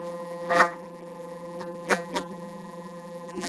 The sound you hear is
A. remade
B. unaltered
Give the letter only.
A